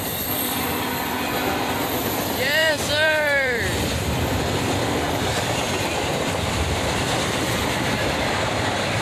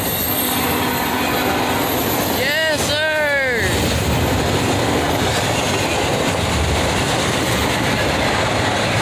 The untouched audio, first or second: second